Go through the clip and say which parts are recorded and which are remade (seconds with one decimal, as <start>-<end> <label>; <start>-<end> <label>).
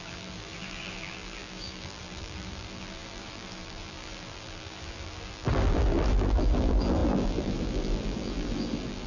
0.0-9.1 remade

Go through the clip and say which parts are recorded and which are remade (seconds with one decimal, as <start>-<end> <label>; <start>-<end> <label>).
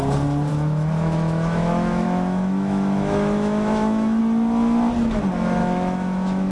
0.0-0.5 recorded; 0.5-4.2 remade; 4.2-5.6 recorded; 5.6-6.5 remade